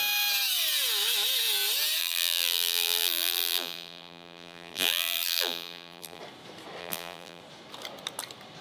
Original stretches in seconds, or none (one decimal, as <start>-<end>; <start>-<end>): 0.0-2.0; 6.2-6.8; 7.4-8.6